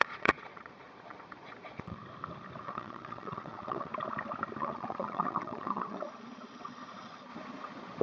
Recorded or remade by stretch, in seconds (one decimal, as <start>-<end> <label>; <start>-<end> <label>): 0.0-2.0 remade; 2.0-2.6 recorded; 2.6-3.9 remade; 3.9-4.6 recorded; 4.6-8.0 remade